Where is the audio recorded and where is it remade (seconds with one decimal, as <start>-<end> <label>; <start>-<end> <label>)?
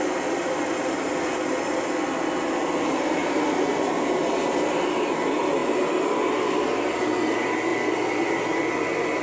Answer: 0.0-9.2 recorded